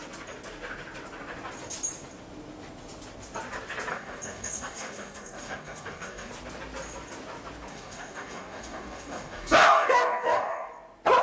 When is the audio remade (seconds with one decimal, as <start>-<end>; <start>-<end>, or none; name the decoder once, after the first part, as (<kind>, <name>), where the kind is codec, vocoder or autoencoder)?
3.9-6.3 (codec, DAC); 7.7-10.7